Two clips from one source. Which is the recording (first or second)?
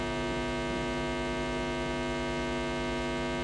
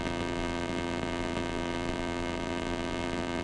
first